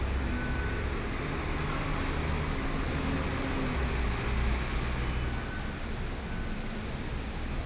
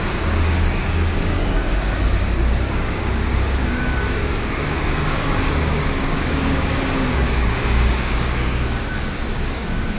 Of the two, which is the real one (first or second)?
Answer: first